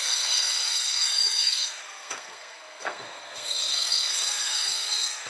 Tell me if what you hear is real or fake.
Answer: fake